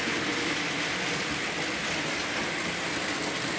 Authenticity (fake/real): real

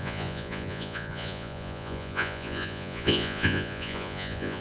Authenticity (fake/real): fake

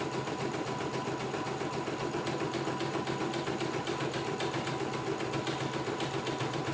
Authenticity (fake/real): real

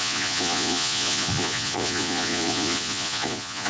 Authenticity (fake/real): fake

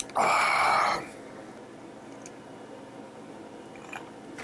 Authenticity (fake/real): real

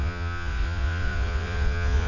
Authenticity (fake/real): fake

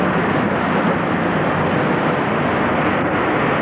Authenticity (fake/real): real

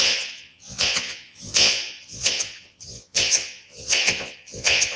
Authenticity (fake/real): fake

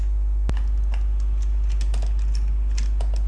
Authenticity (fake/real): real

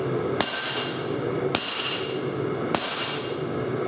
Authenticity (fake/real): real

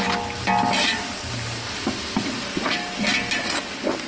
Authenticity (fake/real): real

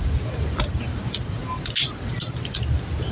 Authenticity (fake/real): real